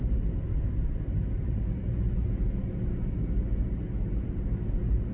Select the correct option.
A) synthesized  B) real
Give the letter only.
B